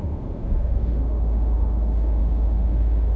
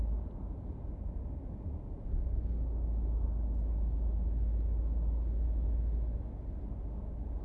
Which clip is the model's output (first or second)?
first